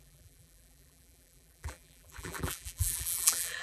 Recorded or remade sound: remade